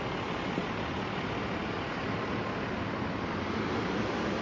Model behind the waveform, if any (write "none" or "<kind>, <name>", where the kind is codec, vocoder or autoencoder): none